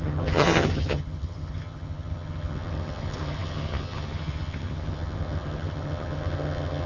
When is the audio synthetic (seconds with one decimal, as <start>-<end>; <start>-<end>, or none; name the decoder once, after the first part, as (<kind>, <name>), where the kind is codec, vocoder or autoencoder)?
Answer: 0.0-6.9 (vocoder, HiFi-GAN)